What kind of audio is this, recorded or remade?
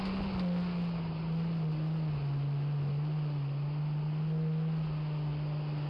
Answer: recorded